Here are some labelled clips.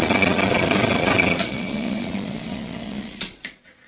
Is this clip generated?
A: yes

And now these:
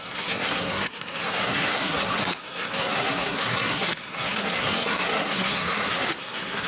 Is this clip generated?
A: yes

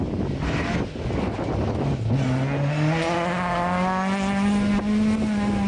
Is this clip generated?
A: no